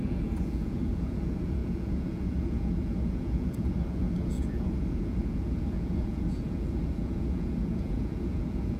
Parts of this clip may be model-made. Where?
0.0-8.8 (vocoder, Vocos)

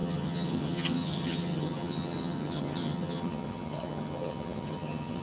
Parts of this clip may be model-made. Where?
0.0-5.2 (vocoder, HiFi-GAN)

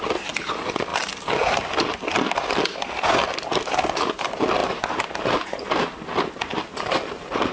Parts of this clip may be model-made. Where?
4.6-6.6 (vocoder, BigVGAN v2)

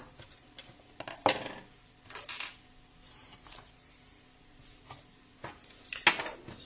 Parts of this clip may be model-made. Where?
none

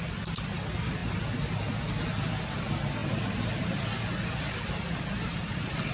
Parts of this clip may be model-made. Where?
none